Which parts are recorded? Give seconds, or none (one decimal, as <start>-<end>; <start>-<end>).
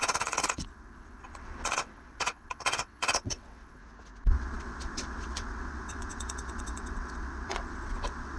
3.8-4.3